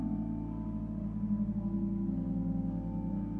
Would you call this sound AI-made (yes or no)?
no